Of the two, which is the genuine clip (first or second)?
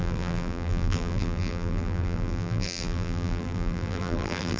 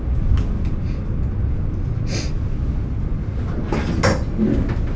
second